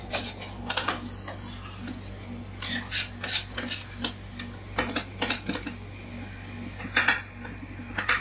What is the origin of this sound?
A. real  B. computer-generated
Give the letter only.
A